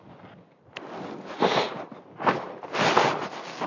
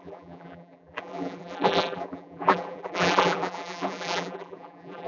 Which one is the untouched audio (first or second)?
first